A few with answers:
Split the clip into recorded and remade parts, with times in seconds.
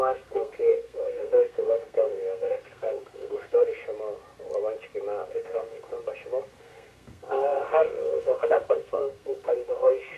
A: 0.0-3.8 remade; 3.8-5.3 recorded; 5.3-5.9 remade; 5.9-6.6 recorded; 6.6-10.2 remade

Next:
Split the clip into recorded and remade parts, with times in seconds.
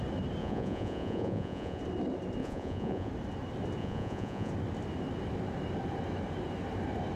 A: 0.0-0.4 recorded; 0.4-1.8 remade; 1.8-2.4 recorded; 2.4-3.1 remade; 3.1-3.8 recorded; 3.8-4.5 remade; 4.5-7.2 recorded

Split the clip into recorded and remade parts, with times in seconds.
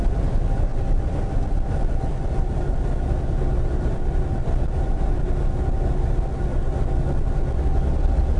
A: 0.0-8.4 recorded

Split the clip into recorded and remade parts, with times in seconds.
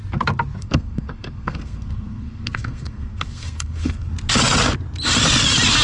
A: 0.0-0.6 recorded; 0.6-4.1 remade; 4.1-5.8 recorded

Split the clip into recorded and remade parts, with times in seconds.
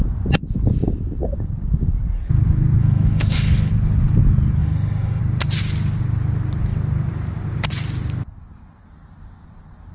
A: 0.0-2.8 recorded; 2.8-3.7 remade; 3.7-4.6 recorded; 4.6-5.2 remade; 5.2-9.9 recorded